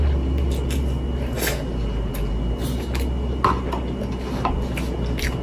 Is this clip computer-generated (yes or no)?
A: no